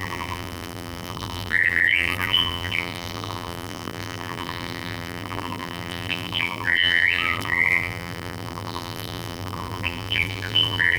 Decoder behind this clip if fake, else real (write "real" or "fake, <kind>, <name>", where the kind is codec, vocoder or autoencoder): fake, vocoder, BigVGAN v2